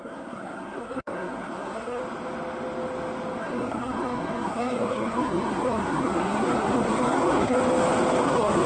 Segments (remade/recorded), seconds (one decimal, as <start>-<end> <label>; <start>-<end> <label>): 0.0-2.0 remade; 2.0-3.4 recorded; 3.4-7.6 remade; 7.6-8.2 recorded; 8.2-8.7 remade